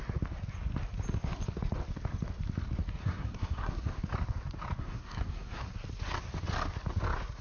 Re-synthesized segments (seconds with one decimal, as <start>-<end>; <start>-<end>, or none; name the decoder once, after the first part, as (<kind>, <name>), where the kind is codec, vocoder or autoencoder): 3.0-4.0 (codec, SNAC); 4.8-5.7